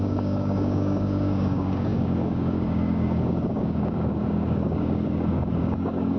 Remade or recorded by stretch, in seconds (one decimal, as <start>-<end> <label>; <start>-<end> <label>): 0.0-6.2 remade